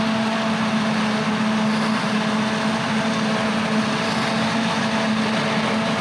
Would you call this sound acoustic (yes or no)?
yes